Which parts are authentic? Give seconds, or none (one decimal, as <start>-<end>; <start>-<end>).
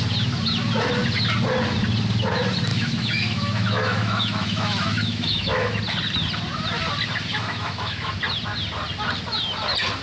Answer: 0.0-2.7; 5.8-7.3; 8.1-10.0